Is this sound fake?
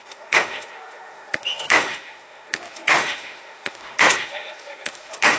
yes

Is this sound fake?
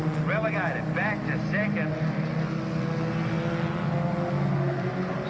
no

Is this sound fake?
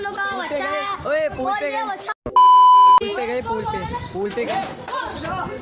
no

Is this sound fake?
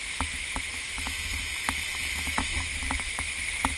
yes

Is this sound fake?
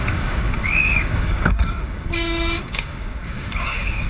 yes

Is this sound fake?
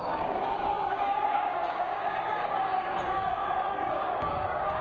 yes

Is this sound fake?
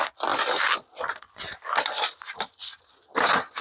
no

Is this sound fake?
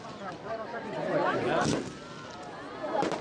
no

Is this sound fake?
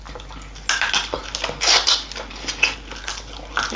no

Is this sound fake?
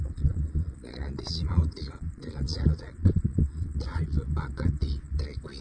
yes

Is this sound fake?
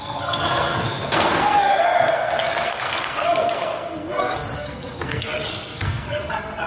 yes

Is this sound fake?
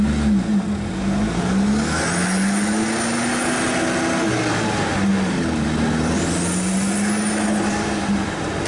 no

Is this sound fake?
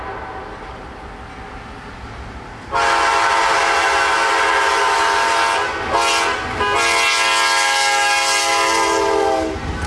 no